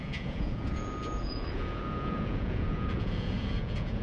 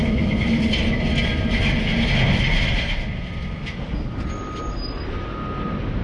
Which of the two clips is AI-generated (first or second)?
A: first